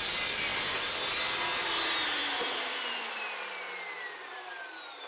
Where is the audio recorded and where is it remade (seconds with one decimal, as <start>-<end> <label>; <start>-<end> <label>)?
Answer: 0.0-5.1 recorded